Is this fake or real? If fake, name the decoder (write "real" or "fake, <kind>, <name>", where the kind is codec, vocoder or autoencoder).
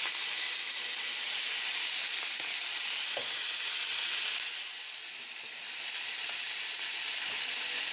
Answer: real